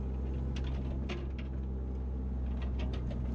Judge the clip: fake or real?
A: real